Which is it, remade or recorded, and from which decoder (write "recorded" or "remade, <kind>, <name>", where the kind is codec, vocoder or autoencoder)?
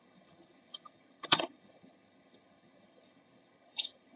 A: remade, vocoder, HiFi-GAN